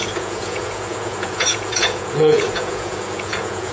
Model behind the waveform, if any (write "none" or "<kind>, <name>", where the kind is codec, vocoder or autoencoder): vocoder, Vocos